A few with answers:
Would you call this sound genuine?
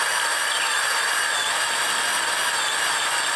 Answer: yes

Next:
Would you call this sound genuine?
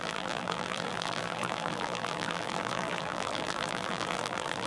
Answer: no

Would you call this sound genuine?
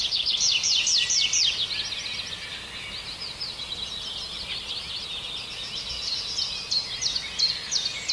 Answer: yes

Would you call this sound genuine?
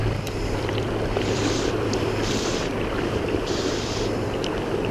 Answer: no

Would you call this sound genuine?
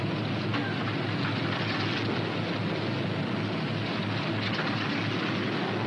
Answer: yes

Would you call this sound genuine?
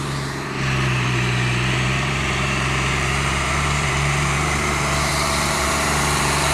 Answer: no